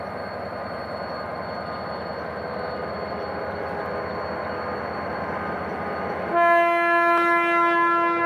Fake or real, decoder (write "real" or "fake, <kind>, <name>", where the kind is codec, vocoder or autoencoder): real